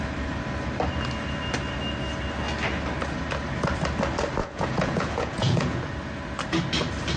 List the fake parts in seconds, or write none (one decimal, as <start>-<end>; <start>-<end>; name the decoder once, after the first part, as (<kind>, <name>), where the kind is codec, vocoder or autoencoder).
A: 4.4-5.8 (vocoder, Vocos)

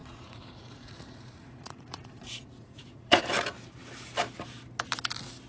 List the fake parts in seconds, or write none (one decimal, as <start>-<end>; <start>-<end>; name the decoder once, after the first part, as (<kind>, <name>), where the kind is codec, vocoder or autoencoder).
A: 0.0-3.3 (vocoder, Vocos)

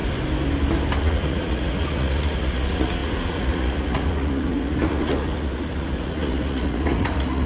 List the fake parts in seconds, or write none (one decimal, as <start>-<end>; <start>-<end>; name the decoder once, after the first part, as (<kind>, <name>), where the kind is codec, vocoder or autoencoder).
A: 1.0-7.5 (vocoder, Vocos)

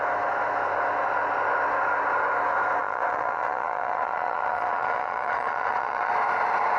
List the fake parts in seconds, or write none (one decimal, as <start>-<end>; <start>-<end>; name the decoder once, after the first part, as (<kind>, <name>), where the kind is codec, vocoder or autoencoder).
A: 2.8-6.1 (vocoder, Vocos)

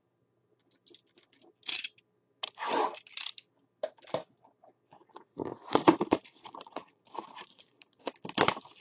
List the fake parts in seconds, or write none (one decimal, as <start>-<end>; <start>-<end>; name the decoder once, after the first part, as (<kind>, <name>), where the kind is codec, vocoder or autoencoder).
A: 5.0-8.1 (vocoder, Vocos)